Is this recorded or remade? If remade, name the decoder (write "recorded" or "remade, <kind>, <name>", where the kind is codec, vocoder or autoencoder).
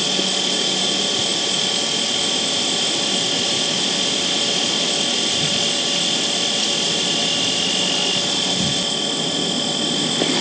recorded